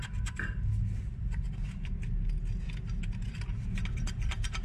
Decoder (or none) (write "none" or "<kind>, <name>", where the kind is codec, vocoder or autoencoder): none